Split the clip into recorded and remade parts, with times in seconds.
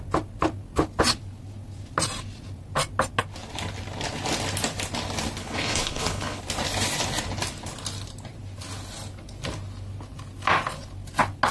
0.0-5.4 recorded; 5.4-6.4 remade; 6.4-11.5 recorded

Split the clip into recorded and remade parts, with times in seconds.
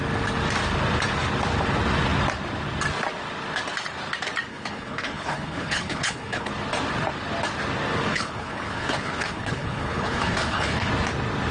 0.0-4.5 recorded; 4.5-6.5 remade; 6.5-8.1 recorded; 8.1-10.9 remade; 10.9-11.5 recorded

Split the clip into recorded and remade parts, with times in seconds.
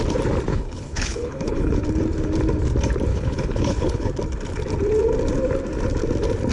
0.0-0.5 recorded; 0.5-1.8 remade; 1.8-3.1 recorded; 3.1-4.1 remade; 4.1-6.5 recorded